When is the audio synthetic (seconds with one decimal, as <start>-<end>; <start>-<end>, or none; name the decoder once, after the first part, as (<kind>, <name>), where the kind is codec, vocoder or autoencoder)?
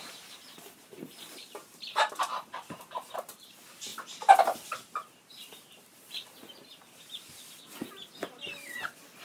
0.0-3.9 (vocoder, BigVGAN v2); 4.4-7.1